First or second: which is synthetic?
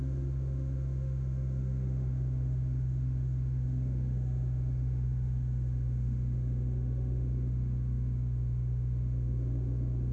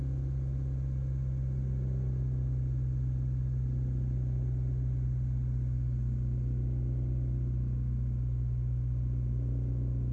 first